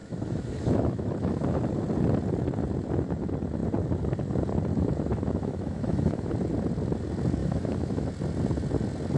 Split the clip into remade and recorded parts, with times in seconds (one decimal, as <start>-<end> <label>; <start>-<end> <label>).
0.0-1.6 remade; 1.6-4.7 recorded; 4.7-6.3 remade; 6.3-7.4 recorded; 7.4-8.1 remade; 8.1-9.2 recorded